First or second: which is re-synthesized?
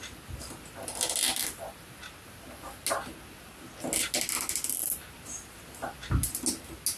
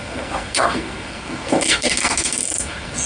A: second